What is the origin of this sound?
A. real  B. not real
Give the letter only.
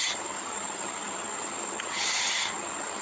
B